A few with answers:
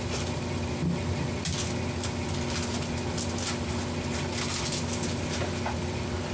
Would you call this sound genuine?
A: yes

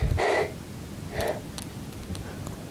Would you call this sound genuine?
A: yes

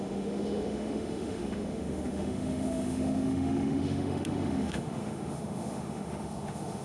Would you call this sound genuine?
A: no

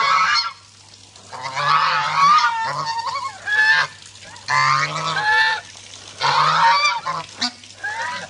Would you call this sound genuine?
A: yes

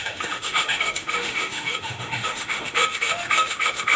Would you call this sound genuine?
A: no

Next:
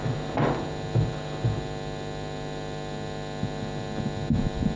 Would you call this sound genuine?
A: yes